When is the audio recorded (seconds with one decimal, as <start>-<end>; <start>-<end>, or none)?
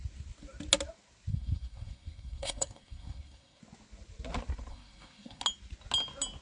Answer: 0.0-1.3; 3.6-4.7; 5.4-6.4